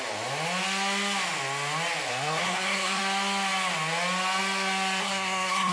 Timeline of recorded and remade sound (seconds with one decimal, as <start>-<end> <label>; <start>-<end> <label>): 0.0-2.1 recorded; 2.1-3.0 remade; 3.0-5.0 recorded; 5.0-5.7 remade